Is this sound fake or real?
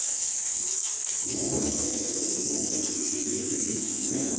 fake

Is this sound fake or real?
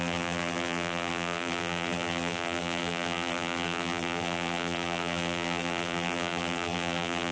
fake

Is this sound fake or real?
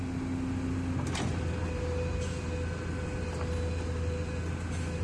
real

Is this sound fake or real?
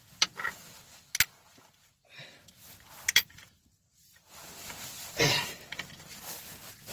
real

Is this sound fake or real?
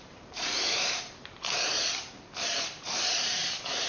fake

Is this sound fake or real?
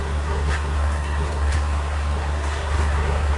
fake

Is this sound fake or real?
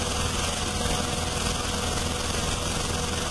real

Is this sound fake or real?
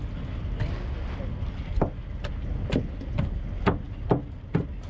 real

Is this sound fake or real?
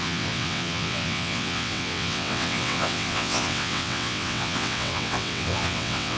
fake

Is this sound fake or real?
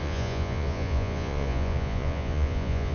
fake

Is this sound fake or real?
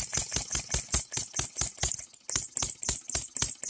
real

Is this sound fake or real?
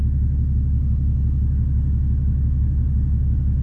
real